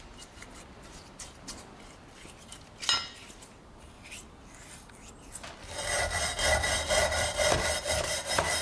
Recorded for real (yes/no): yes